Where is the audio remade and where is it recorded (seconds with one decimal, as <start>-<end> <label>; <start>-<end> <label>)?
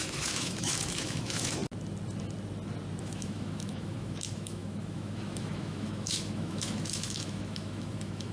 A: 0.0-1.6 remade; 1.6-3.0 recorded; 3.0-8.3 remade